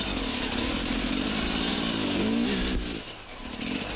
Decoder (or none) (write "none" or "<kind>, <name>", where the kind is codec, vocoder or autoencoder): none